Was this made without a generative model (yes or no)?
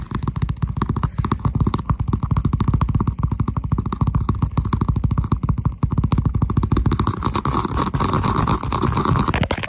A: yes